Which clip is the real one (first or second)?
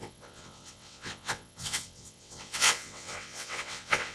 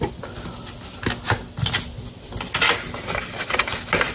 second